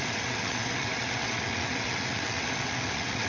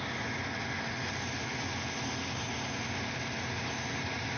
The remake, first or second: first